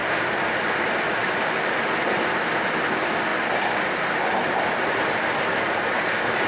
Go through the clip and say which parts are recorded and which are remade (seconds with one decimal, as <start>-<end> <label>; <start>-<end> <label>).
0.0-0.8 recorded; 0.8-3.3 remade; 3.3-4.7 recorded; 4.7-6.5 remade